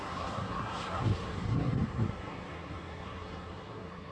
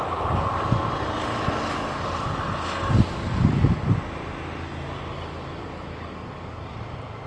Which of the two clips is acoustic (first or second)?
second